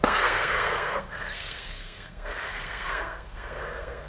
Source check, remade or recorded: remade